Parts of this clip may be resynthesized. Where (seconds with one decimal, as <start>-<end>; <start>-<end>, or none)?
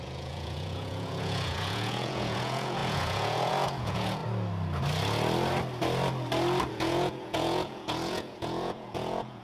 0.0-4.2; 6.7-9.4